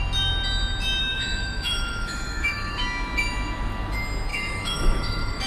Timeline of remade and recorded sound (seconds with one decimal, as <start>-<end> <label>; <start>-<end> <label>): 0.0-1.0 recorded; 1.0-2.8 remade; 2.8-4.3 recorded; 4.3-5.5 remade